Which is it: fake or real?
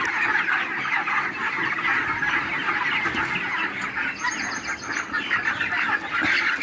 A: real